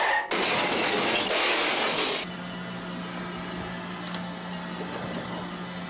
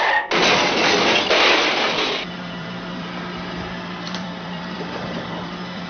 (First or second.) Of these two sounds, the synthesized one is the second